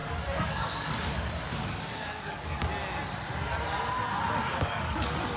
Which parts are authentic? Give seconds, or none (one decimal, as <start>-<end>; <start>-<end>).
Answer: 2.6-4.5